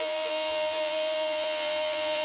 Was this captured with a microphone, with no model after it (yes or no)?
no